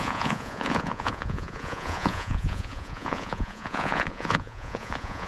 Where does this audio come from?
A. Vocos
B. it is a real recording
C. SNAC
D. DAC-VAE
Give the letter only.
A